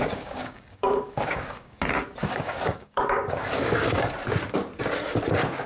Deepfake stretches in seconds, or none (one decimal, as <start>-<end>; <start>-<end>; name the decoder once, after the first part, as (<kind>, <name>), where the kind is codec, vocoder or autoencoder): 0.0-1.8 (codec, DAC); 2.2-4.0